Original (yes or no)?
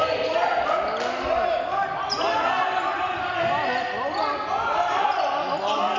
yes